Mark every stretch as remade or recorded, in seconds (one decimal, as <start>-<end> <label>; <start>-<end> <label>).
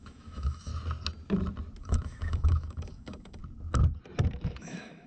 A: 0.0-0.7 remade; 0.7-1.8 recorded; 1.8-3.4 remade; 3.4-4.6 recorded; 4.6-5.1 remade